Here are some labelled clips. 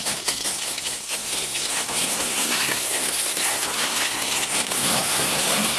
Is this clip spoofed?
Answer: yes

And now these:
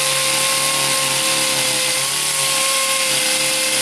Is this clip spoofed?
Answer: no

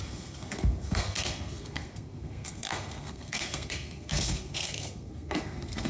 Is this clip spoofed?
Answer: yes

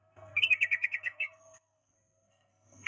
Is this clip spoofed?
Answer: yes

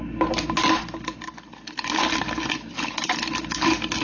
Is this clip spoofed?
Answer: no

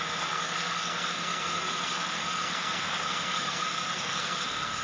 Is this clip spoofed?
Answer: yes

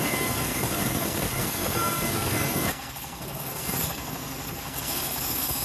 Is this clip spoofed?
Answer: yes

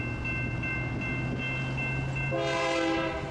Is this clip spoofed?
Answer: no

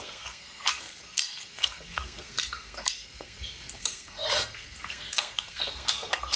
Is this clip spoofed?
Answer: yes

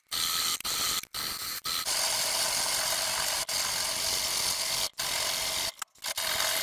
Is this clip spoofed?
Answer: no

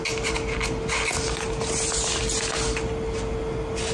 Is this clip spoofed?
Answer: no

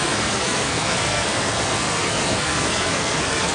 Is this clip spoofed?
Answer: yes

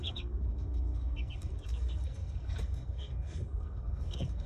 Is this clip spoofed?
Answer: yes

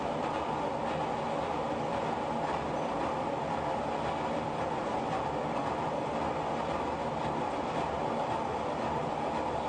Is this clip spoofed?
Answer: no